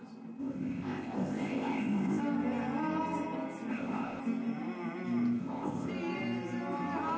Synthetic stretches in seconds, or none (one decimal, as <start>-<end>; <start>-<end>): 0.4-2.2; 3.7-4.2; 5.4-5.9